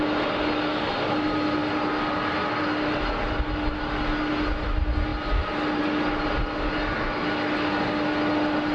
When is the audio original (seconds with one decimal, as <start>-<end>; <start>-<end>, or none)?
0.0-8.7

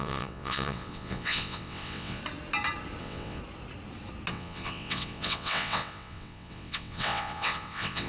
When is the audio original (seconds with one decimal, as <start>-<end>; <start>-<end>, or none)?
2.2-3.0; 3.4-4.3

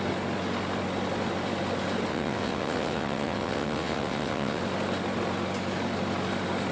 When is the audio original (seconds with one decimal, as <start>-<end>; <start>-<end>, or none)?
0.0-2.1; 4.6-6.7